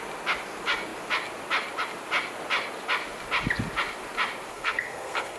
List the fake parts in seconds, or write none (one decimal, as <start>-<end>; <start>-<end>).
4.5-5.4